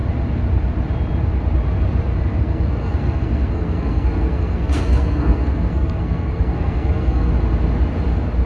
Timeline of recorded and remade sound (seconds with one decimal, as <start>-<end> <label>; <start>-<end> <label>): 0.0-2.4 recorded; 2.4-7.3 remade; 7.3-8.5 recorded

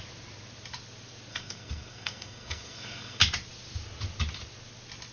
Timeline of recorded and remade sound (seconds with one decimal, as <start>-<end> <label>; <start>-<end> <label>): 0.0-1.3 recorded; 1.3-3.2 remade; 3.2-5.1 recorded

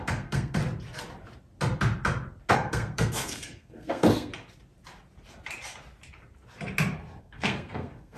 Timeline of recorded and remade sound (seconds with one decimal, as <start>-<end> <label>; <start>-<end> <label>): 0.0-0.6 remade; 0.6-2.5 recorded; 2.5-4.3 remade; 4.3-7.2 recorded; 7.2-8.2 remade

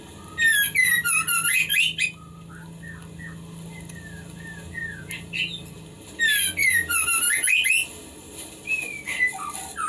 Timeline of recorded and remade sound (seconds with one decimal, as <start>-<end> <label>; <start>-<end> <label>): 0.0-9.9 recorded

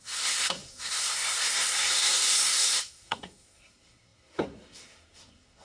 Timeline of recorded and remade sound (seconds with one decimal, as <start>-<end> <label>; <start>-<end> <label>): 0.0-5.6 remade